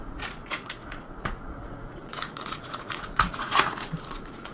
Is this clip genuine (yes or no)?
no